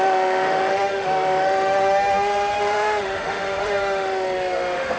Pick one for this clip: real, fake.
fake